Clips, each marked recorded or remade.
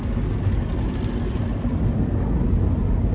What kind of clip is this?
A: recorded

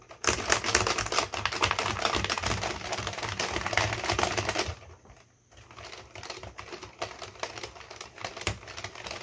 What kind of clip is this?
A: recorded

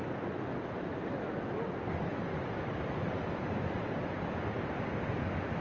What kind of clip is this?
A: recorded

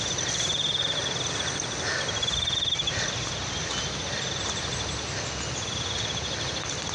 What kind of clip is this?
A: recorded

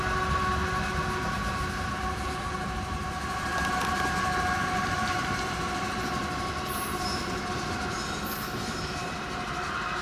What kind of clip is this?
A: recorded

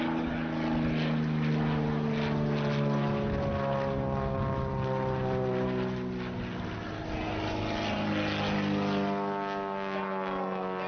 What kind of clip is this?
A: recorded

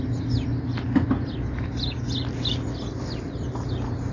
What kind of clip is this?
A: recorded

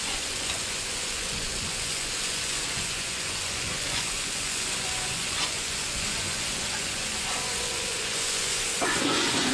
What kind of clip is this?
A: remade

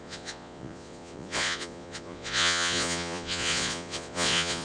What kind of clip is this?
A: remade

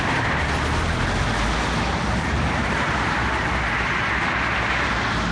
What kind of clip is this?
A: recorded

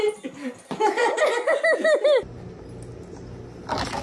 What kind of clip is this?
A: recorded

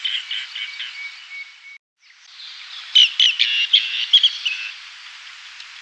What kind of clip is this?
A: recorded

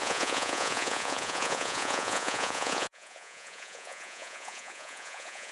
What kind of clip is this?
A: remade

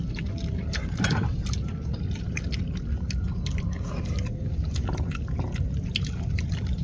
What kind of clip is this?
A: recorded